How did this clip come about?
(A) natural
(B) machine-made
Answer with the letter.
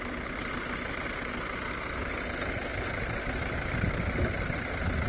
A